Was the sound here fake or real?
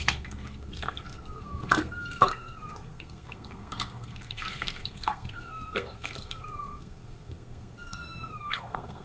fake